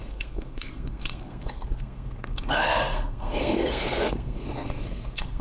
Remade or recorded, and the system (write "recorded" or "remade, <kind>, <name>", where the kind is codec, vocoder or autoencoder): remade, codec, SNAC